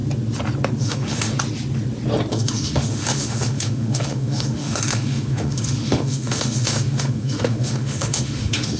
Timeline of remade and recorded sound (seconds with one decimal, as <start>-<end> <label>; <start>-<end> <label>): 0.0-0.8 recorded; 0.8-1.3 remade; 1.3-2.3 recorded; 2.3-8.8 remade